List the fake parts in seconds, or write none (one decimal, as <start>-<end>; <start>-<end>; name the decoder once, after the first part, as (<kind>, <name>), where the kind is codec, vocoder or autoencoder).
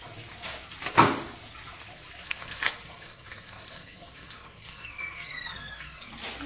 2.2-6.1 (codec, SNAC)